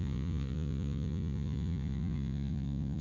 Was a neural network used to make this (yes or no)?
yes